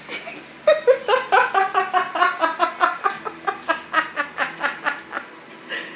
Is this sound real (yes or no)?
yes